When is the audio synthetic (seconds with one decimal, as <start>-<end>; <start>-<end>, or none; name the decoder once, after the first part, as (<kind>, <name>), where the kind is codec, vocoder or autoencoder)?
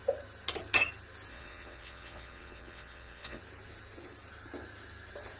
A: 1.3-3.4 (vocoder, WaveNeXt)